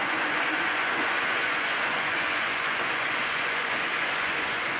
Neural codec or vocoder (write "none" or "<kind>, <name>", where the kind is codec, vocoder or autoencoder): vocoder, Vocos